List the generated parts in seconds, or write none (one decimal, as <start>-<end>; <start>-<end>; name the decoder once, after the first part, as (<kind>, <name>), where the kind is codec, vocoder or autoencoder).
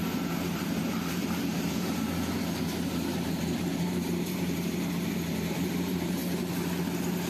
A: 0.0-6.2 (vocoder, BigVGAN v2)